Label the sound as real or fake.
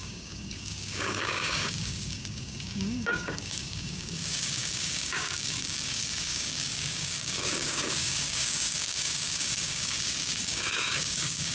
fake